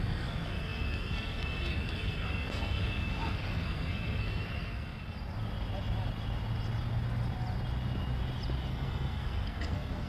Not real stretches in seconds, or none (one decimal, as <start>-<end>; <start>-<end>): 0.0-5.0; 8.7-10.1